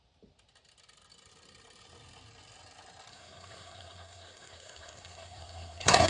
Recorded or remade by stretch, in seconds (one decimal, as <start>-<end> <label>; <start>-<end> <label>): 0.0-3.1 recorded; 3.1-6.1 remade